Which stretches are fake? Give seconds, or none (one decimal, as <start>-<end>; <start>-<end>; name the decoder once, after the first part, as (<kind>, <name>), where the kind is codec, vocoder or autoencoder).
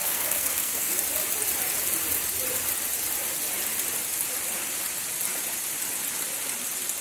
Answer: 0.0-1.0 (codec, SNAC)